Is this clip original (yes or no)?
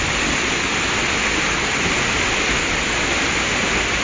yes